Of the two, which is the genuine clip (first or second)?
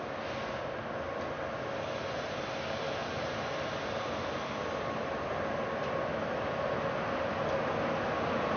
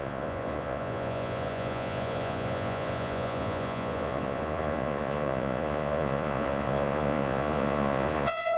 first